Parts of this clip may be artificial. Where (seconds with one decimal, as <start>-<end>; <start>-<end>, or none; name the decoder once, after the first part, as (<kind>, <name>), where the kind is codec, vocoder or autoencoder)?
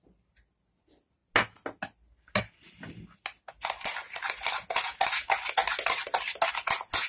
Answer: none